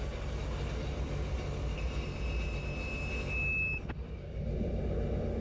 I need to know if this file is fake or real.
real